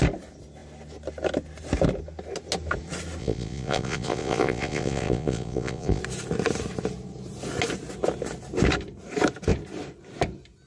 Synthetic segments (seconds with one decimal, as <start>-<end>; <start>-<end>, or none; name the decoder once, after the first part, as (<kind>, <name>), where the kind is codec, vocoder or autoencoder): 3.2-6.0 (vocoder, Vocos)